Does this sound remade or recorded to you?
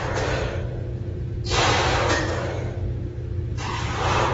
remade